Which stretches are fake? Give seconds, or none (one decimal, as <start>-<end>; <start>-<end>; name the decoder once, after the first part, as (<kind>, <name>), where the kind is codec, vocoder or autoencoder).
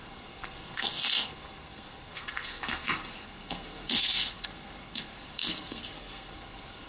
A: 0.0-6.9 (codec, SNAC)